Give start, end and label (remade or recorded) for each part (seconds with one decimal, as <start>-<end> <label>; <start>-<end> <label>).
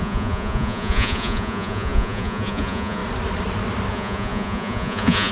0.0-3.0 remade; 3.0-3.9 recorded; 3.9-5.3 remade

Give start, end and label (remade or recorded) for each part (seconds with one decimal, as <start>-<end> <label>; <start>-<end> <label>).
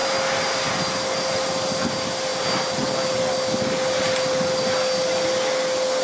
0.0-6.0 recorded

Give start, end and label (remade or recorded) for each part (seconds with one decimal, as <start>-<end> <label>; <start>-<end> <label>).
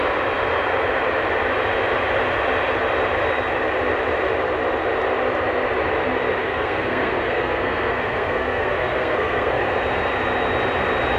0.0-6.4 recorded; 6.4-9.6 remade; 9.6-11.2 recorded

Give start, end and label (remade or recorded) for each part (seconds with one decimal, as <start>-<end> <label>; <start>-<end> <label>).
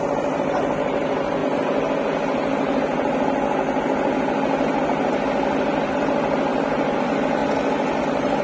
0.0-1.4 remade; 1.4-5.9 recorded; 5.9-7.4 remade; 7.4-8.0 recorded; 8.0-8.4 remade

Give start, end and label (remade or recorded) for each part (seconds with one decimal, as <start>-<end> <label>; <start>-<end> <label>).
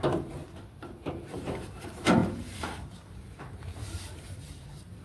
0.0-0.4 remade; 0.4-1.1 recorded; 1.1-5.0 remade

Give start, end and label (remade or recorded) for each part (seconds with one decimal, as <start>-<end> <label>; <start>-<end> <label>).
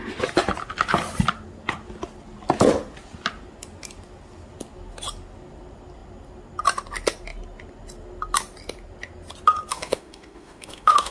0.0-9.7 recorded; 9.7-11.1 remade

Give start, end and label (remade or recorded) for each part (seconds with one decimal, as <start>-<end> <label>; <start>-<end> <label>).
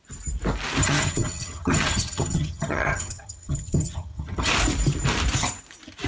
0.0-0.8 recorded; 0.8-4.5 remade; 4.5-6.1 recorded